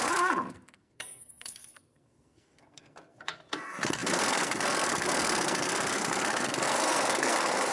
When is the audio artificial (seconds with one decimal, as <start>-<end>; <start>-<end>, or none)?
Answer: 0.0-7.7